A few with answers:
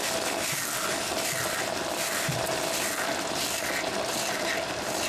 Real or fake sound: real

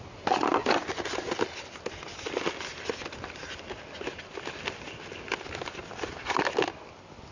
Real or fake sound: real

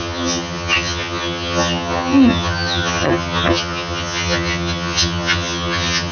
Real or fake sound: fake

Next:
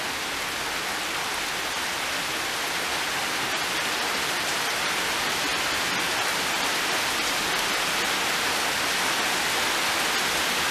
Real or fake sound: real